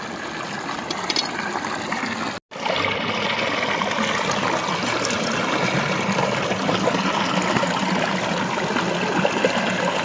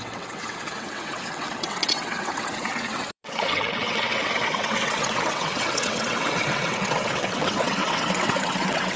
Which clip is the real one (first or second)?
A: first